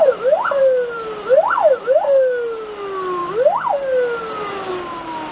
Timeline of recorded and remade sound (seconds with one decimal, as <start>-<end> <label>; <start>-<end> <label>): 0.0-5.3 recorded